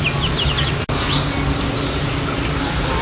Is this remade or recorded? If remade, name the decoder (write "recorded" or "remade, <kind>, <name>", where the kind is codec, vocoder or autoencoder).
recorded